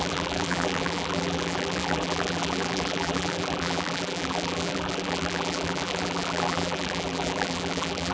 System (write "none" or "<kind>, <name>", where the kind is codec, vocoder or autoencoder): vocoder, BigVGAN v2